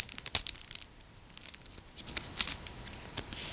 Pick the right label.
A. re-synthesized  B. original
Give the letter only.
B